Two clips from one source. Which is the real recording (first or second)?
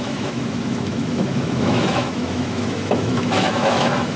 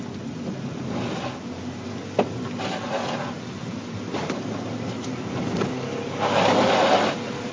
second